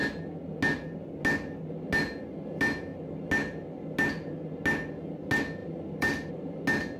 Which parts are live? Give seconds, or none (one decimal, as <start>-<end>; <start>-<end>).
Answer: 0.0-5.6; 6.3-7.0